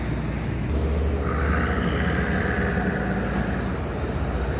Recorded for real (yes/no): yes